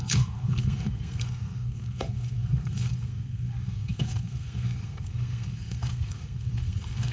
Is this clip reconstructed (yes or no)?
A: yes